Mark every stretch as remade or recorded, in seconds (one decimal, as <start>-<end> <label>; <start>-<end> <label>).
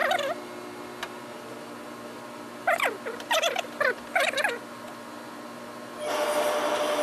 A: 0.0-7.0 recorded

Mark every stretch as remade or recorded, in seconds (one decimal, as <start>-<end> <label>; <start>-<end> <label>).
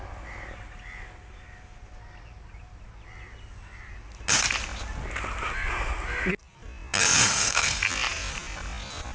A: 0.0-7.2 recorded; 7.2-7.8 remade; 7.8-9.1 recorded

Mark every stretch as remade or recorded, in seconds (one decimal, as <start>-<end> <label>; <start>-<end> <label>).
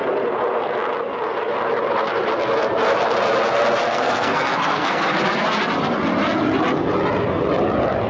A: 0.0-3.8 recorded; 3.8-5.2 remade; 5.2-8.1 recorded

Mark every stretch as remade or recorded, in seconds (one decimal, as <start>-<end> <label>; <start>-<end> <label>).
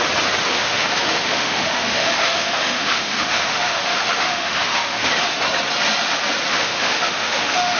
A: 0.0-0.4 recorded; 0.4-5.1 remade; 5.1-6.5 recorded; 6.5-7.8 remade